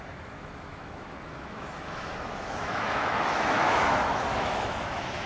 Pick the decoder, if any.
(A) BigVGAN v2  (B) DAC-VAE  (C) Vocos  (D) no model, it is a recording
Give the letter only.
B